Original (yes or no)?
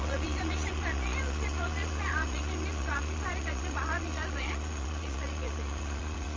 no